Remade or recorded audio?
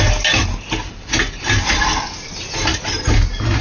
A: recorded